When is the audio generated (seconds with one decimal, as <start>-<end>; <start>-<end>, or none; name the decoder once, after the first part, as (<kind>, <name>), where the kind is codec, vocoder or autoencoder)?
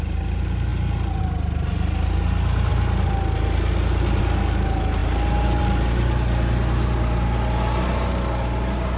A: none